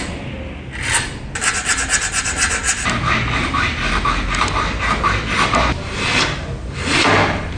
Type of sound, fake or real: real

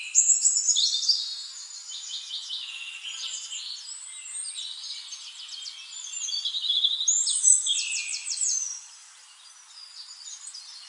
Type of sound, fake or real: real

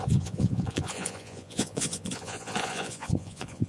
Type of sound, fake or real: fake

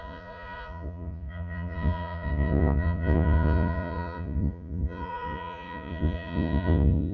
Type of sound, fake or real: fake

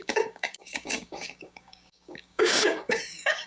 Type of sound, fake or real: fake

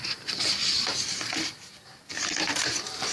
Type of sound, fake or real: fake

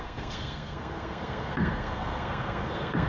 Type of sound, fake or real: fake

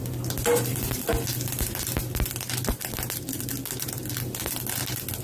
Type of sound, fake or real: real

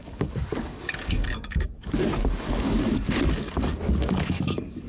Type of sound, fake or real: fake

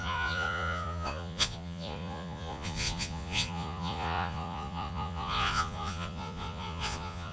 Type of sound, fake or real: fake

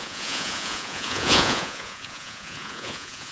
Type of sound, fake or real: fake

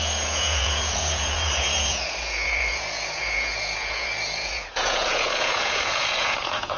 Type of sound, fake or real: fake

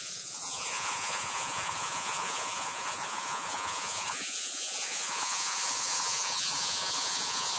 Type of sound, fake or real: fake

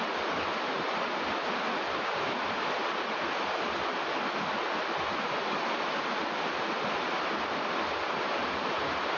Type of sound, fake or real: real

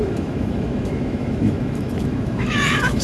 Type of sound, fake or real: fake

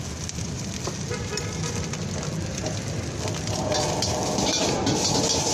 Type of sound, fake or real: real